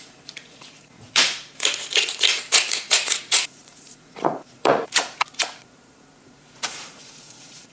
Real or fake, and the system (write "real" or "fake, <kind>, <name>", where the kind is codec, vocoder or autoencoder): fake, vocoder, Vocos